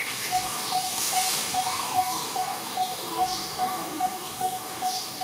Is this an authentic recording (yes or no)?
no